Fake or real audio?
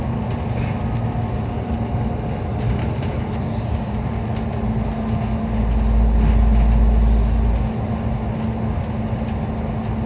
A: real